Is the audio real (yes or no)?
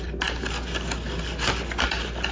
yes